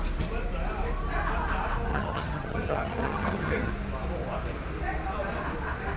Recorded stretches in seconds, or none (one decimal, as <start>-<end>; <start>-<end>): 0.0-1.9; 3.7-6.0